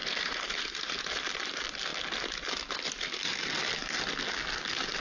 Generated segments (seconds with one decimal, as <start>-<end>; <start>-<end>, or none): 0.0-1.2